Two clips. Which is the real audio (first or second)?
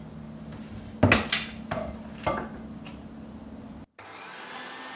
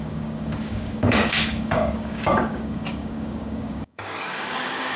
first